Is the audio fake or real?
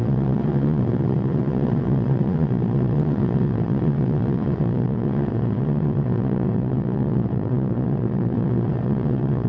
fake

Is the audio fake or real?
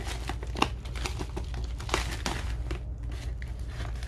real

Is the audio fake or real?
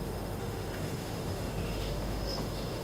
fake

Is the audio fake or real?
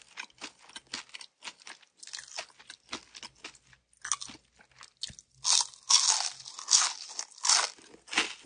real